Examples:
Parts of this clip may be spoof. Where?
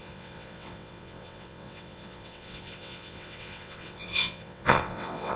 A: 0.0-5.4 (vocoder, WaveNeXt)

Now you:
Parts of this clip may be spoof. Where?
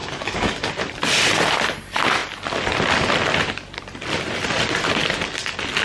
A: 0.0-0.7 (codec, DAC)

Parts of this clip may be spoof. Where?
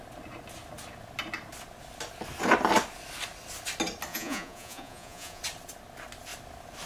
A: 4.1-5.4 (vocoder, Vocos)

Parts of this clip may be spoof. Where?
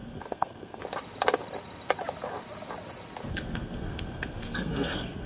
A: 0.0-0.8 (codec, SNAC); 3.3-5.3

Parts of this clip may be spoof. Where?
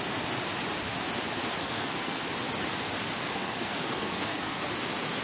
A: 1.6-2.2 (codec, SNAC); 3.2-4.7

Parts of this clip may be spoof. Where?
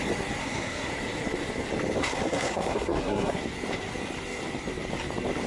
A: 0.4-0.9 (codec, SNAC); 2.0-3.4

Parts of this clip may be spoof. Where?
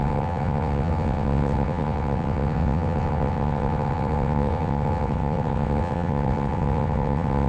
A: 0.0-7.5 (vocoder, WaveNeXt)